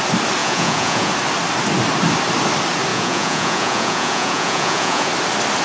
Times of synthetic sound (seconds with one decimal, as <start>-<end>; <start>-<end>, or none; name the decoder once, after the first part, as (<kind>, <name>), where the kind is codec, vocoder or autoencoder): 0.4-1.1 (vocoder, Vocos); 2.9-5.1